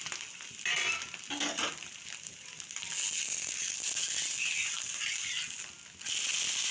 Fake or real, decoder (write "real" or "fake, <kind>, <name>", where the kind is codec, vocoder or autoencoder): real